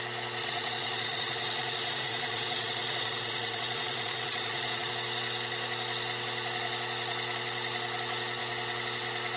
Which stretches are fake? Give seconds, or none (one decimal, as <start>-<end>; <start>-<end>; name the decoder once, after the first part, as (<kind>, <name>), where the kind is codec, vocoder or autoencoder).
0.4-4.9 (vocoder, Vocos)